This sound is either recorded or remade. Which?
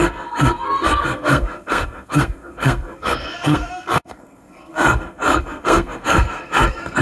remade